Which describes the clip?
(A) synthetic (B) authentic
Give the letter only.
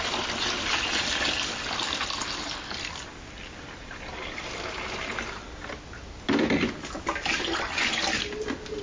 B